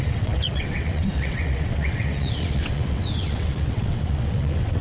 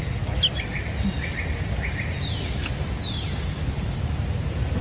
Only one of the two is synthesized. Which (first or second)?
first